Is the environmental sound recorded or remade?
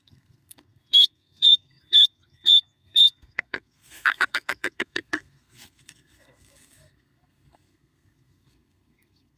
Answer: remade